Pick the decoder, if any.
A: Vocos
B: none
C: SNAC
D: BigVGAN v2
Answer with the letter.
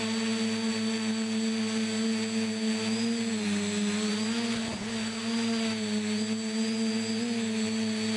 B